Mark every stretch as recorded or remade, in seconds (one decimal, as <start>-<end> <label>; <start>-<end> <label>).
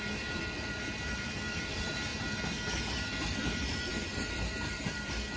0.0-2.1 remade; 2.1-2.8 recorded; 2.8-5.4 remade